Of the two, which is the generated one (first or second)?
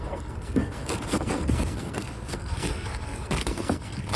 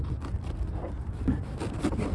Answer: first